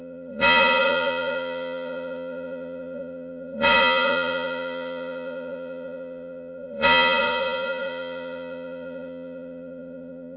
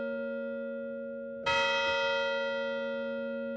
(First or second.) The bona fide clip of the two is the second